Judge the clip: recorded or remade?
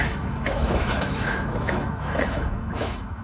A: remade